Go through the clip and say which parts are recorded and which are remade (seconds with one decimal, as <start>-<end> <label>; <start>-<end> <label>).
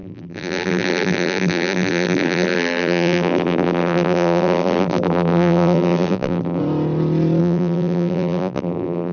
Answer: 0.0-6.6 remade; 6.6-7.4 recorded; 7.4-9.1 remade